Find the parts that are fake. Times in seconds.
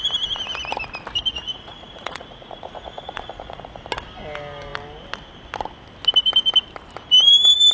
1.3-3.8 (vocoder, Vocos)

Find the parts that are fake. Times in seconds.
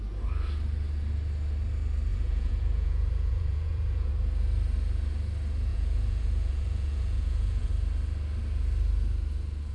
2.1-4.1 (vocoder, Vocos); 5.7-7.7